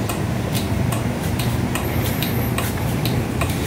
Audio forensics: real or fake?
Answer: fake